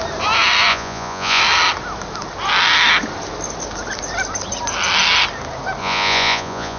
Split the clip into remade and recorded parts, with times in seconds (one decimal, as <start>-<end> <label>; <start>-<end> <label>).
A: 0.0-0.7 recorded; 0.7-1.4 remade; 1.4-5.8 recorded; 5.8-6.8 remade